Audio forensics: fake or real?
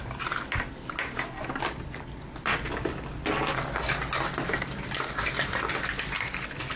real